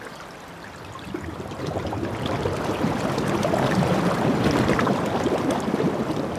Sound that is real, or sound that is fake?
fake